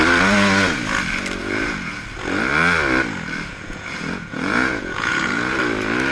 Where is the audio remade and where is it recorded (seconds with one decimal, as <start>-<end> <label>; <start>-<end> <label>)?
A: 0.0-1.4 recorded; 1.4-2.0 remade; 2.0-3.5 recorded; 3.5-5.6 remade; 5.6-6.1 recorded